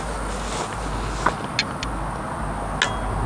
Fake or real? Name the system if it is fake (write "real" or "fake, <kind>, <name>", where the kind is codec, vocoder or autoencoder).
real